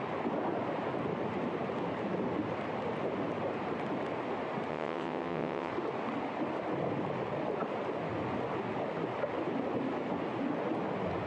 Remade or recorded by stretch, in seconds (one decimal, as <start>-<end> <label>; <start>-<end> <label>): 0.0-4.7 recorded; 4.7-5.7 remade; 5.7-11.3 recorded